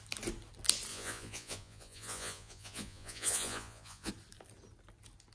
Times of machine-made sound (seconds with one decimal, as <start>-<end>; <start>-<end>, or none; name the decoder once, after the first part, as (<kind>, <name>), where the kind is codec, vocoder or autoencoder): 0.9-4.1 (vocoder, Vocos)